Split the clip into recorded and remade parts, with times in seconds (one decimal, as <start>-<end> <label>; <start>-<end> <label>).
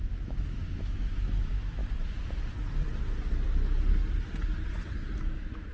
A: 0.0-1.8 remade; 1.8-5.2 recorded; 5.2-5.7 remade